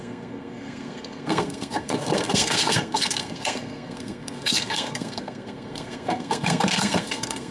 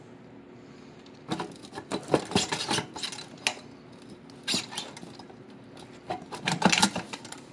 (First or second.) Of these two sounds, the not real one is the first